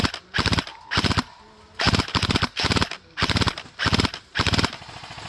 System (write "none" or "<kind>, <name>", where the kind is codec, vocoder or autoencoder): none